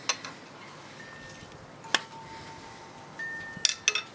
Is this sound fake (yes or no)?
no